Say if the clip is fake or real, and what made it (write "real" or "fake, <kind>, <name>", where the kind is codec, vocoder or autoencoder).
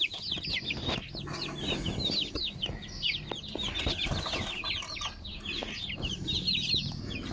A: real